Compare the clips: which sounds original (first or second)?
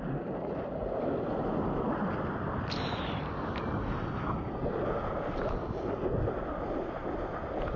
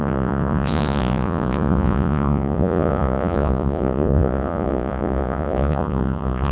first